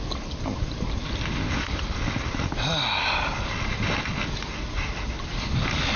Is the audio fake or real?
real